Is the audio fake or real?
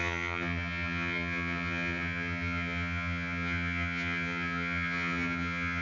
fake